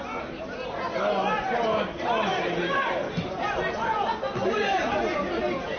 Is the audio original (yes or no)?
yes